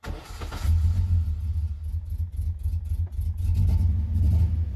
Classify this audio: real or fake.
real